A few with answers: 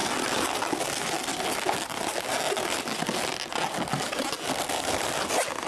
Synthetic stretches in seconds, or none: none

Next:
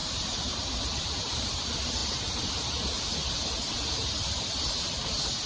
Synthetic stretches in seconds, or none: 0.0-1.6 (vocoder, BigVGAN v2)